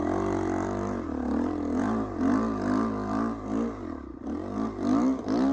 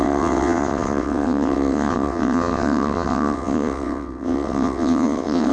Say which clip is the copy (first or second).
second